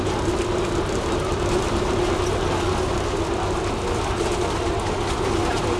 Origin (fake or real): real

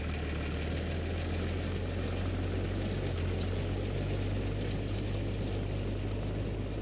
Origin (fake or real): real